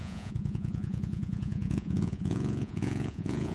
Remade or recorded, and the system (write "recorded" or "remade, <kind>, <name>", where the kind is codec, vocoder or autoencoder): remade, vocoder, Vocos